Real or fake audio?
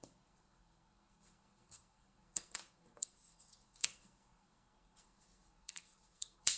fake